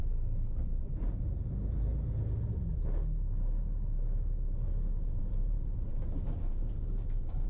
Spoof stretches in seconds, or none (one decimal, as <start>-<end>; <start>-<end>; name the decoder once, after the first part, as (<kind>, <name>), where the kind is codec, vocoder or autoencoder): 0.0-1.9 (vocoder, BigVGAN v2); 5.2-7.5